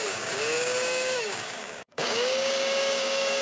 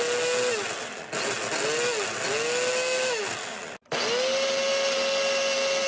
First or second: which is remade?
first